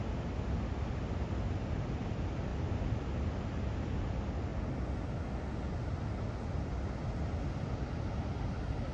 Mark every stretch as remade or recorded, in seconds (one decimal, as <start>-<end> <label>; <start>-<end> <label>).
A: 0.0-8.9 recorded